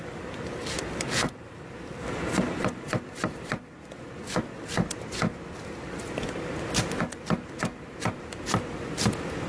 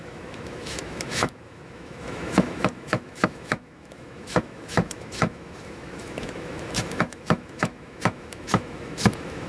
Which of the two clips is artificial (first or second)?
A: second